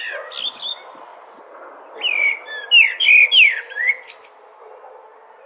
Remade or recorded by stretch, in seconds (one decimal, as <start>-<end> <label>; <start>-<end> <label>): 0.0-5.5 recorded